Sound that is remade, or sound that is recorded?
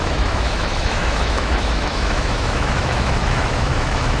remade